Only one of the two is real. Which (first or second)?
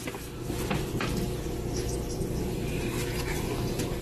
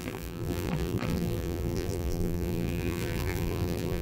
first